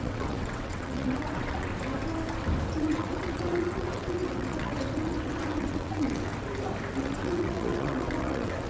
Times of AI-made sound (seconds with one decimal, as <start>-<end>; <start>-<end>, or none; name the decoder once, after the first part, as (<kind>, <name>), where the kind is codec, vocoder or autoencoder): 0.0-1.7 (vocoder, WaveNeXt); 2.7-6.3; 7.0-8.7